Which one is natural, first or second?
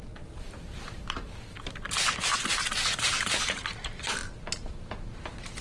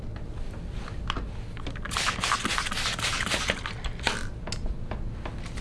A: second